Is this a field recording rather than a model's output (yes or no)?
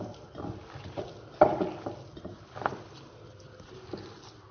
yes